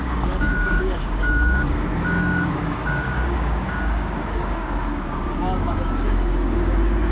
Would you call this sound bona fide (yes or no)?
no